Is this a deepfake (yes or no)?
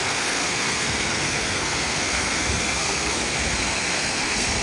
yes